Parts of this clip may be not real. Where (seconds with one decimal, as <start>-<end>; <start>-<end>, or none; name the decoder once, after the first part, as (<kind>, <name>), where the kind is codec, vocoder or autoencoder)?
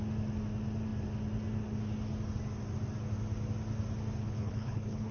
4.2-5.1 (codec, HILCodec)